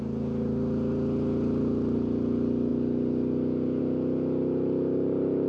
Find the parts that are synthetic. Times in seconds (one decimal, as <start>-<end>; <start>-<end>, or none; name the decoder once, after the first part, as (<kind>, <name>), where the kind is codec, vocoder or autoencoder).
none